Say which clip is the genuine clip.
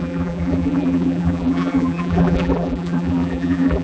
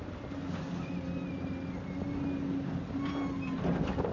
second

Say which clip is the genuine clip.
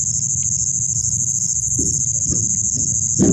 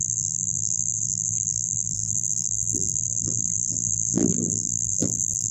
first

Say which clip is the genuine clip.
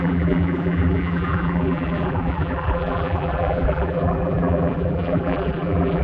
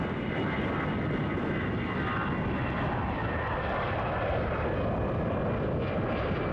second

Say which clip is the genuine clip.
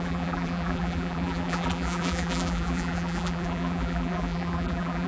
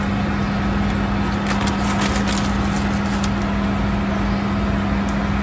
second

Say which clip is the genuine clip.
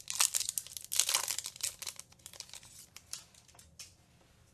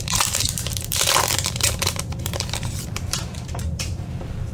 first